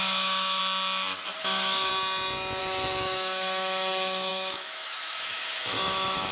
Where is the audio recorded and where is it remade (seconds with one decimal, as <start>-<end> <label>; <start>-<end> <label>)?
0.0-0.6 remade; 0.6-1.4 recorded; 1.4-1.9 remade; 1.9-2.6 recorded; 2.6-6.3 remade

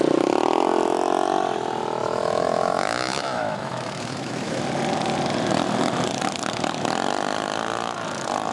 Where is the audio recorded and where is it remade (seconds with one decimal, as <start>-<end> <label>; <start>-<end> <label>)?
0.0-2.0 recorded; 2.0-4.6 remade; 4.6-8.5 recorded

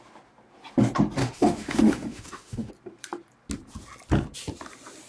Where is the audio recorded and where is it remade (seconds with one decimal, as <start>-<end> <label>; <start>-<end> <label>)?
0.0-1.2 recorded; 1.2-2.7 remade; 2.7-5.1 recorded

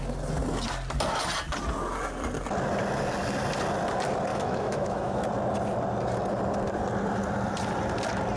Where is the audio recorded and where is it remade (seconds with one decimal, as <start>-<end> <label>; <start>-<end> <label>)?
0.0-4.3 recorded; 4.3-5.2 remade; 5.2-8.4 recorded

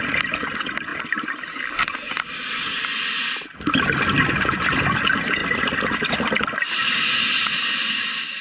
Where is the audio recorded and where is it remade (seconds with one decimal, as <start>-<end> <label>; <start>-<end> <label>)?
0.0-8.4 recorded

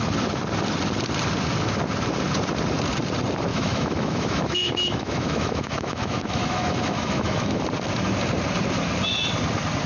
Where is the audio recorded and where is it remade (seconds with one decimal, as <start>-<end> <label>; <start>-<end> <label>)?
0.0-3.5 recorded; 3.5-7.6 remade; 7.6-9.9 recorded

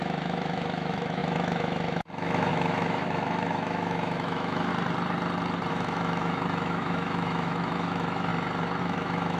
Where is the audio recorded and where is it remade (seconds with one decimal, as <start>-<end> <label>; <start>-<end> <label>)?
0.0-4.7 remade; 4.7-5.7 recorded; 5.7-8.3 remade; 8.3-8.8 recorded; 8.8-9.4 remade

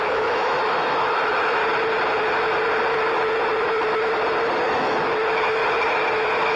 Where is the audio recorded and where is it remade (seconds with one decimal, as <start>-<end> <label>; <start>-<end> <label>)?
0.0-1.6 remade; 1.6-4.6 recorded; 4.6-5.6 remade; 5.6-6.1 recorded; 6.1-6.6 remade